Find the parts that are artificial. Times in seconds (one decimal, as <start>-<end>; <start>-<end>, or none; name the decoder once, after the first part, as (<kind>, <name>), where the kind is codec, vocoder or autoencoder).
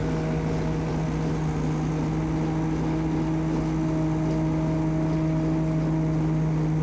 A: none